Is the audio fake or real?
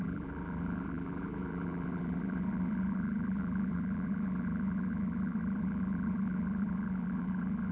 fake